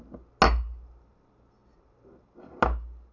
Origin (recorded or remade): recorded